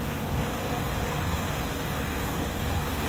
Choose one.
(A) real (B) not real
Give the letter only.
B